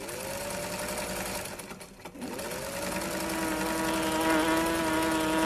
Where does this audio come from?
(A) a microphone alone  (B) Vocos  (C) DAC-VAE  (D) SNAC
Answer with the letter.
A